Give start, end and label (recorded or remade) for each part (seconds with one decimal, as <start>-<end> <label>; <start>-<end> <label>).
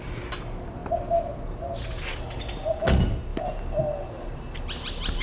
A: 0.0-5.2 recorded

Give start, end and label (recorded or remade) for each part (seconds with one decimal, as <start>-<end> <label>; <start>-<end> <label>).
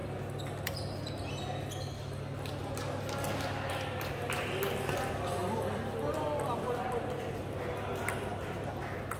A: 0.0-9.2 recorded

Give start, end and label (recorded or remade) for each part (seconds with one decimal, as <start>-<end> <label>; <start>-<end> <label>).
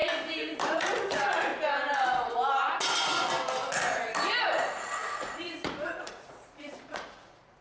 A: 0.0-0.6 recorded; 0.6-1.5 remade; 1.5-4.4 recorded; 4.4-7.6 remade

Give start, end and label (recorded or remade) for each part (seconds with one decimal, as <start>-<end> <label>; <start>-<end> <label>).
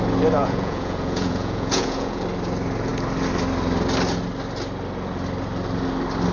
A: 0.0-0.4 recorded; 0.4-2.2 remade; 2.2-6.3 recorded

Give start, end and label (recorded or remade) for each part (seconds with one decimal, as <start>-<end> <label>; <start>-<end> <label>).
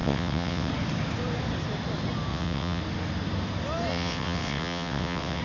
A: 0.0-0.7 remade; 0.7-2.3 recorded; 2.3-2.8 remade; 2.8-3.9 recorded; 3.9-5.4 remade